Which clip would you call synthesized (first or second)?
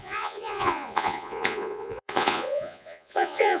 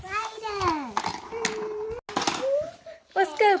first